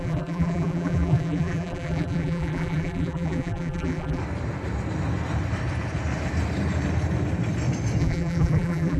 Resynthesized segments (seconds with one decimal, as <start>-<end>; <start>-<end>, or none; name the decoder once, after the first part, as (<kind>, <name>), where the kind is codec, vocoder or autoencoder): 0.0-4.2 (vocoder, BigVGAN v2); 8.0-9.0